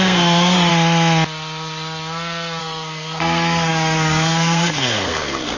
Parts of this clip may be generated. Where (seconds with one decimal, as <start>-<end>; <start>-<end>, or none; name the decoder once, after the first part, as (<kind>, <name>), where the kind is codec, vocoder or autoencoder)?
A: 0.0-0.7 (codec, SNAC); 2.6-5.6